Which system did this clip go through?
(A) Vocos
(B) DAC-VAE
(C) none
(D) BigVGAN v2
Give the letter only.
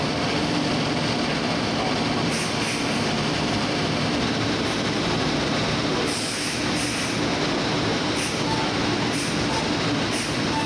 C